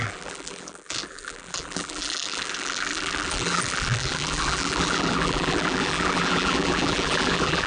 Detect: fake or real fake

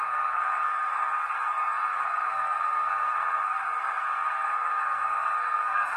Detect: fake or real fake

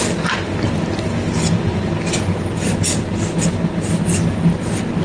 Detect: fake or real real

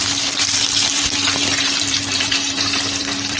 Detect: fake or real fake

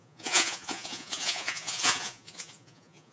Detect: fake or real fake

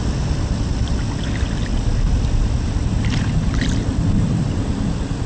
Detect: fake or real real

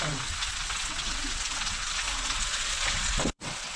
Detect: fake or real fake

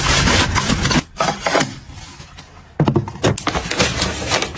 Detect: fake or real real